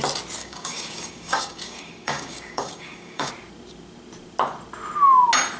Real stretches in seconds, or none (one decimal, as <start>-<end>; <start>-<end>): 0.0-0.4; 3.3-5.6